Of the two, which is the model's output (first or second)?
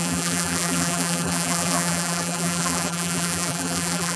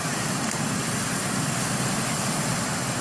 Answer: first